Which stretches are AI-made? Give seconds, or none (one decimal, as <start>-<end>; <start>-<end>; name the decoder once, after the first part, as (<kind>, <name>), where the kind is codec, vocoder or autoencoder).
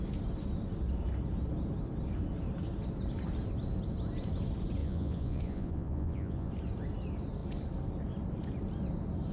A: 4.8-6.5 (vocoder, Vocos)